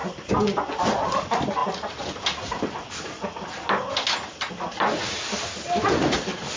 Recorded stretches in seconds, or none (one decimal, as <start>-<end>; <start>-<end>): 0.0-6.6